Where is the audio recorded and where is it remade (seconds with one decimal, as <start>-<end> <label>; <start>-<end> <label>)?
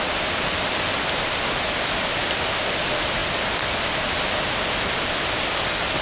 0.0-6.0 recorded